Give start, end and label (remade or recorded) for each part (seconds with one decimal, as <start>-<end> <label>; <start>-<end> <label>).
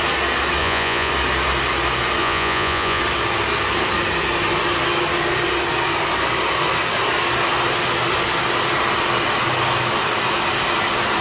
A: 0.0-0.6 recorded; 0.6-1.1 remade; 1.1-2.2 recorded; 2.2-3.0 remade; 3.0-11.2 recorded